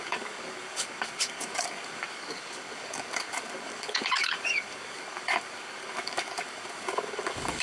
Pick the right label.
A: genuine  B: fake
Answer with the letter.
B